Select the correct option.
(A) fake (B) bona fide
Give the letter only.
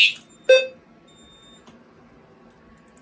B